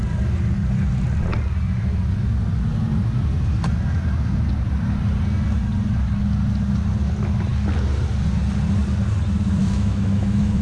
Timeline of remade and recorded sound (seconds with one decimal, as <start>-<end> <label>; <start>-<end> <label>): 0.0-9.6 recorded; 9.6-10.6 remade